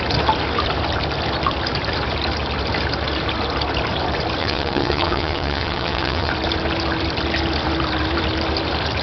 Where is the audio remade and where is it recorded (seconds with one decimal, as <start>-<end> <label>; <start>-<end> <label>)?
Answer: 0.0-4.4 recorded; 4.4-6.3 remade; 6.3-9.0 recorded